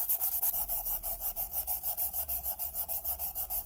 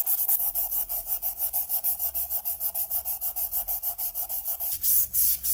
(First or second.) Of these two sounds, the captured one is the second